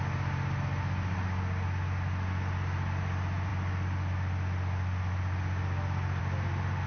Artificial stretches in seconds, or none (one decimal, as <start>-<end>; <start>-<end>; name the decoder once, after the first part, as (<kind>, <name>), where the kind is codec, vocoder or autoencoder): none